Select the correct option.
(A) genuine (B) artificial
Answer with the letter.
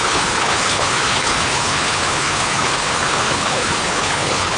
B